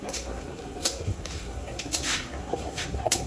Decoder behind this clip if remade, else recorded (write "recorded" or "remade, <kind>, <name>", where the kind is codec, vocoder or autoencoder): remade, codec, SNAC